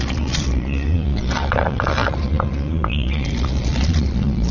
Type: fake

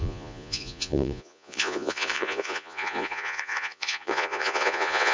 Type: fake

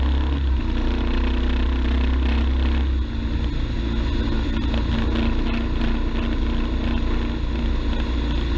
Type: real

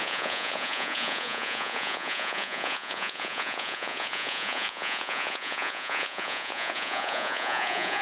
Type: fake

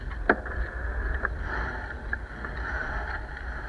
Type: real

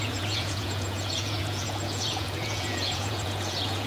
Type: fake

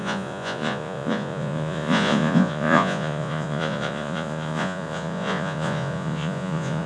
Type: fake